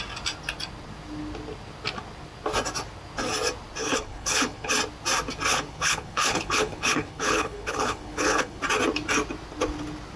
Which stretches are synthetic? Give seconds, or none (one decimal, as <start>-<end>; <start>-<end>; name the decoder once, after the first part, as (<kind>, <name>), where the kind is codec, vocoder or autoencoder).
3.8-4.7 (codec, HILCodec); 5.5-8.6